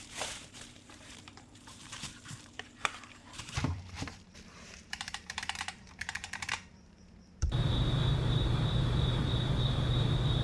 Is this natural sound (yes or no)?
no